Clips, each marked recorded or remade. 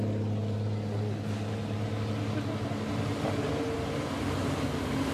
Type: recorded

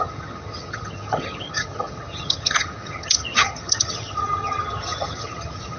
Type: remade